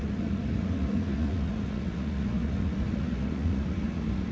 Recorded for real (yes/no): no